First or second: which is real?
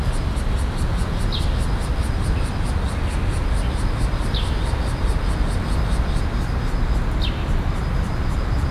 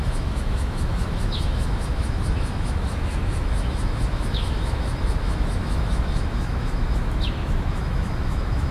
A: first